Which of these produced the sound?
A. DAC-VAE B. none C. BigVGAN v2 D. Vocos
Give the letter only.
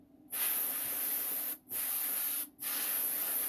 B